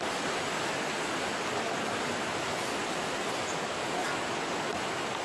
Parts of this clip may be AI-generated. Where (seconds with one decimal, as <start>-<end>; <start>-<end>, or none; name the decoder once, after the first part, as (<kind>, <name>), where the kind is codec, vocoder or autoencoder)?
none